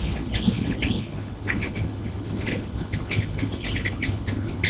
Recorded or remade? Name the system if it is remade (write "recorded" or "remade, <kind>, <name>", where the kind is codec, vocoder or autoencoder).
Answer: remade, codec, HILCodec